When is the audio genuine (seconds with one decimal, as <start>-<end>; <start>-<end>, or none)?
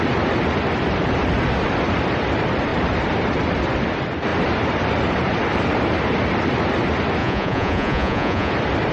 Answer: 0.0-7.2; 8.5-8.9